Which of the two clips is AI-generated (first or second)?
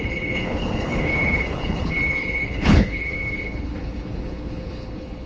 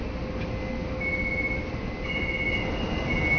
first